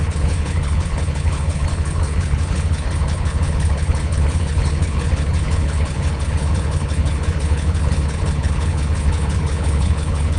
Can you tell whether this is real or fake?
fake